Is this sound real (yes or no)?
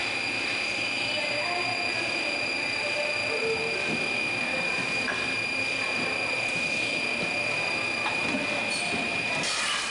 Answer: no